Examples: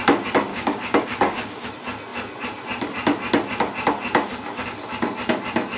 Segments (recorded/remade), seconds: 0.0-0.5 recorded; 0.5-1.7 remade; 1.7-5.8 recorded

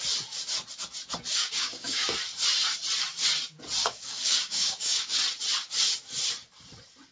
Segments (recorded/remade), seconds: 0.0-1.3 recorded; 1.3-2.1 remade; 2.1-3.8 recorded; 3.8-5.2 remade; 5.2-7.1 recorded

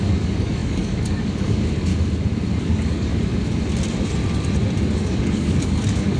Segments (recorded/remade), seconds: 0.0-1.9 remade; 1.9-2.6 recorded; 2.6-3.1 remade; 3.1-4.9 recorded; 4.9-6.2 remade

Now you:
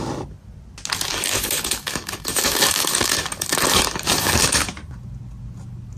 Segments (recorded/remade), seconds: 0.0-1.1 recorded; 1.1-4.7 remade; 4.7-6.0 recorded